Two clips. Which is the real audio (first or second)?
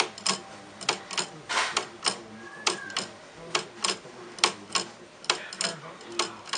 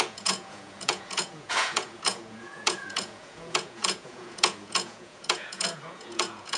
first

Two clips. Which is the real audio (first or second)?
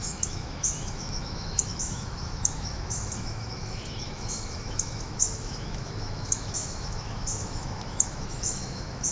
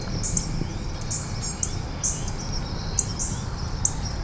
second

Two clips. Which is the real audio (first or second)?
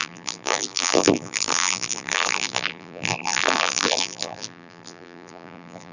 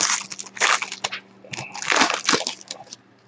second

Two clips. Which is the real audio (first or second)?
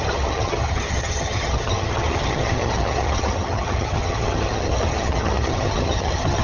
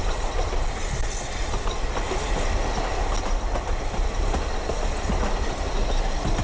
second